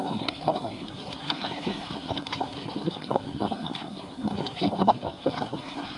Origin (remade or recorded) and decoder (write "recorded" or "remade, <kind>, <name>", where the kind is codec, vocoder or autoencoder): remade, codec, SNAC